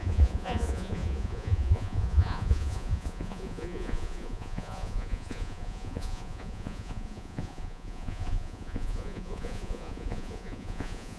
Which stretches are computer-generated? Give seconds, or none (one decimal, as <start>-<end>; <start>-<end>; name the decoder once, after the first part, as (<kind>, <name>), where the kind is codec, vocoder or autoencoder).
0.0-11.2 (vocoder, Vocos)